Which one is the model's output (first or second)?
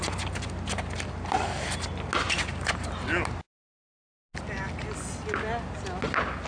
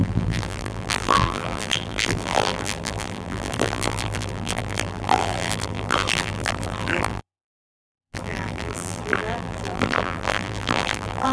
second